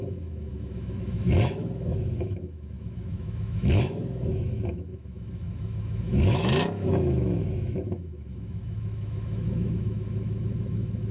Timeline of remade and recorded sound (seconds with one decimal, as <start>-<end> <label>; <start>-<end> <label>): 0.0-11.1 remade